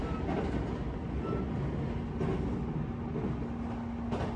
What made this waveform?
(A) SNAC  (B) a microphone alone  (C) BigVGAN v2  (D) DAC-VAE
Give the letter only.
B